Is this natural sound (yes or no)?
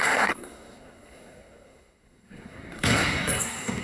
no